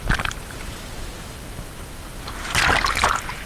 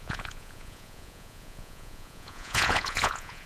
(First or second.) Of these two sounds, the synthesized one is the second